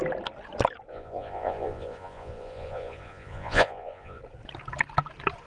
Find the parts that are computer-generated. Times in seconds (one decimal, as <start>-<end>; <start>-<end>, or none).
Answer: 0.9-4.2